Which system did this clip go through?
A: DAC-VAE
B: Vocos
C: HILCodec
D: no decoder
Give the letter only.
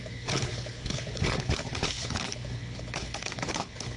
C